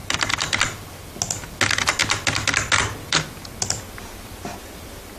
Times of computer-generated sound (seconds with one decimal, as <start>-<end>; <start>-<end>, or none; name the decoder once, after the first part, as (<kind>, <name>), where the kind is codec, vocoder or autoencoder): 0.0-1.2 (vocoder, BigVGAN v2)